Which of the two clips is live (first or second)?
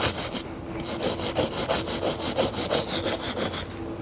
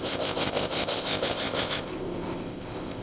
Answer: first